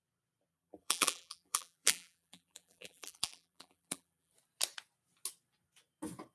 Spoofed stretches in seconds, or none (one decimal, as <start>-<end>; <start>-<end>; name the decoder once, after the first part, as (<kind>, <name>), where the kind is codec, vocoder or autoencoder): 0.5-4.3 (vocoder, BigVGAN v2)

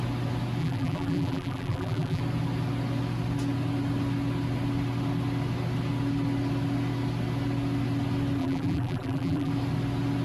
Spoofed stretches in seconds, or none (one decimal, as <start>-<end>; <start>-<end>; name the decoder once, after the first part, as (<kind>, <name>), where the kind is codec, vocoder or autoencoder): 0.6-2.2 (vocoder, BigVGAN v2); 8.4-9.5

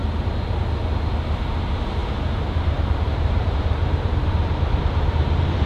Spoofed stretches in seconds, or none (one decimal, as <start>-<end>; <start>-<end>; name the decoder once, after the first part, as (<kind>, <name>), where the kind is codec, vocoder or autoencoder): 1.5-5.7 (vocoder, BigVGAN v2)